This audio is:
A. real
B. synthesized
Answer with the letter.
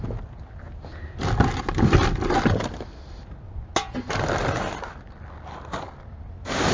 A